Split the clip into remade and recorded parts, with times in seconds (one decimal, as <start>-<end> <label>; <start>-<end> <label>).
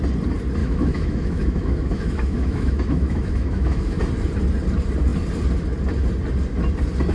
0.0-0.6 recorded; 0.6-4.0 remade; 4.0-7.1 recorded